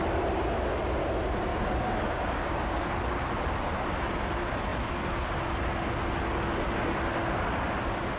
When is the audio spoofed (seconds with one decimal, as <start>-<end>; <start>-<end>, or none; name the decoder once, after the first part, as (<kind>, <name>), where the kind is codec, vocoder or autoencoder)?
1.5-2.9 (codec, DAC)

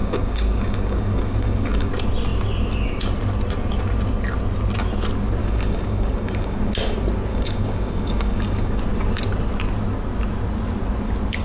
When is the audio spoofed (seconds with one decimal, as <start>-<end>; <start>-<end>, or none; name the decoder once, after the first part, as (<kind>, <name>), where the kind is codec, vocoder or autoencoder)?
0.0-1.9 (codec, DAC); 5.4-6.7; 7.3-8.8

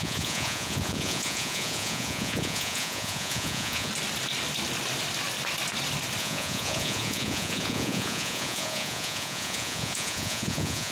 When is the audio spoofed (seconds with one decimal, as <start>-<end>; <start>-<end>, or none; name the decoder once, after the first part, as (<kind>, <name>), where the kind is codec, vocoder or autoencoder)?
0.0-3.9 (vocoder, Vocos); 6.2-10.9